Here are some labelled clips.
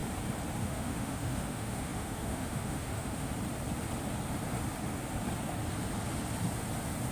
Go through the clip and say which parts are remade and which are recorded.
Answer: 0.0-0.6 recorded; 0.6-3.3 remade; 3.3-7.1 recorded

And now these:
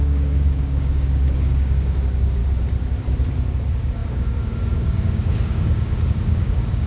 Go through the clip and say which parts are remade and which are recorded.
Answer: 0.0-2.4 remade; 2.4-3.5 recorded; 3.5-6.9 remade

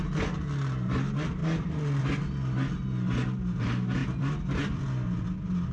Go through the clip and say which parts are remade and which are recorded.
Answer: 0.0-1.4 recorded; 1.4-2.0 remade; 2.0-4.0 recorded; 4.0-4.8 remade; 4.8-5.7 recorded

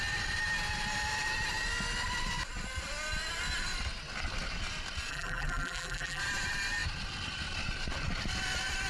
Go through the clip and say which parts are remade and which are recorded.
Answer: 0.0-5.1 recorded; 5.1-6.2 remade; 6.2-8.9 recorded

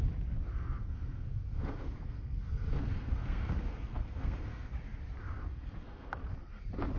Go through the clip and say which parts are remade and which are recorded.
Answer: 0.0-0.5 recorded; 0.5-4.7 remade; 4.7-5.2 recorded; 5.2-6.1 remade; 6.1-7.0 recorded